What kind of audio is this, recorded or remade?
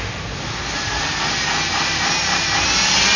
recorded